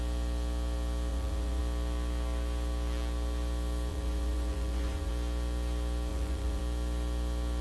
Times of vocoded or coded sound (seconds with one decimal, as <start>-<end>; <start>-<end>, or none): 1.1-1.6; 3.9-5.1; 6.1-6.6